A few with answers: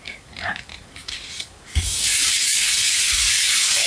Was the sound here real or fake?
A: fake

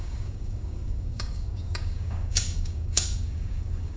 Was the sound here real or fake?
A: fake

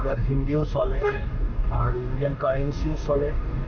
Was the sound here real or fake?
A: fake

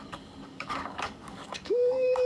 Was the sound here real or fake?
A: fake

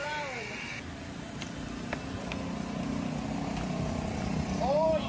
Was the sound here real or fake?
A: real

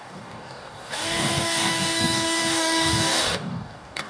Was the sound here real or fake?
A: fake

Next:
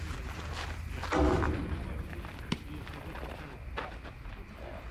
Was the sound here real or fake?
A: real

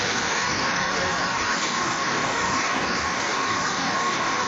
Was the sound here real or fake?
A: fake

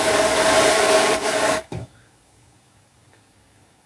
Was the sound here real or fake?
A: fake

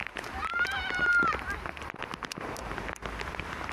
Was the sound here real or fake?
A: real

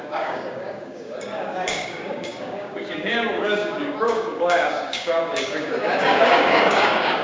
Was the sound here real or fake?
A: fake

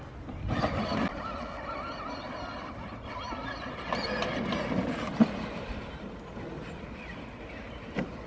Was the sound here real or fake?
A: real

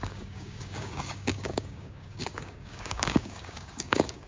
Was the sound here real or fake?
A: fake